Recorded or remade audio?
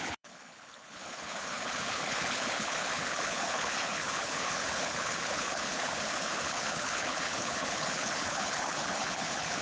remade